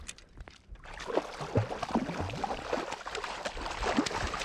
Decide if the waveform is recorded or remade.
recorded